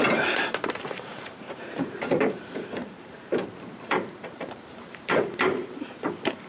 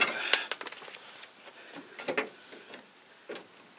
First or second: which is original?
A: second